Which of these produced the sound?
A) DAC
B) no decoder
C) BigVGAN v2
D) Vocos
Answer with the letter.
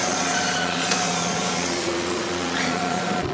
D